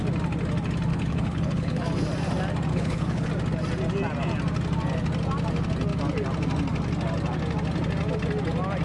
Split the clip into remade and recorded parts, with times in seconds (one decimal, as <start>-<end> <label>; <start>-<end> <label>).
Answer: 0.0-0.9 recorded; 0.9-1.8 remade; 1.8-2.7 recorded; 2.7-3.3 remade; 3.3-8.8 recorded